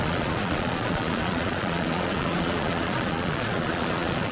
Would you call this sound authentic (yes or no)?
no